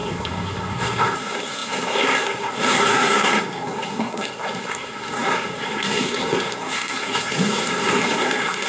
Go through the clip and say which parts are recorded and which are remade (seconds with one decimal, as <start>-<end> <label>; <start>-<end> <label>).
0.0-8.7 remade